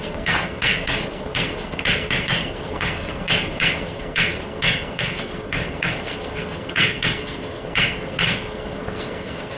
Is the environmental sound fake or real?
fake